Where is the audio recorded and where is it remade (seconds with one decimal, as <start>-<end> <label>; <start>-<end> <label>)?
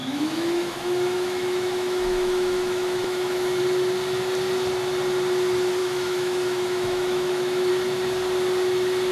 0.0-3.6 remade; 3.6-5.8 recorded; 5.8-7.7 remade; 7.7-9.1 recorded